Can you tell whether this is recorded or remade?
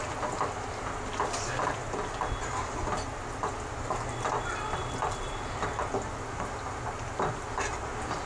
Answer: recorded